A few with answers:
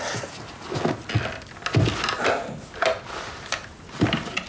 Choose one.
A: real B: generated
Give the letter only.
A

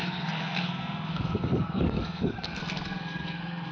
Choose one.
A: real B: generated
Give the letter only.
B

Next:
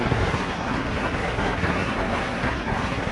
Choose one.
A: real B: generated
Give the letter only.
B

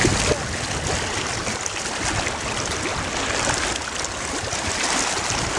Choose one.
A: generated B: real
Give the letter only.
B